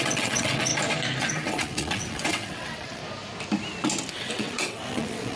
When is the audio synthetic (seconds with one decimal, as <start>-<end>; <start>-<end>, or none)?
0.0-0.7; 1.2-3.0; 4.1-5.4

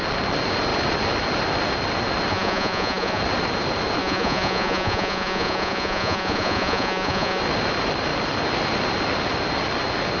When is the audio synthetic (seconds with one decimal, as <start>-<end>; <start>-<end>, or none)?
2.3-3.2; 4.0-7.4